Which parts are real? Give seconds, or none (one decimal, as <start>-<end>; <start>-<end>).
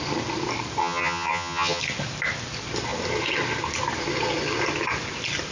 0.0-0.8; 1.8-5.5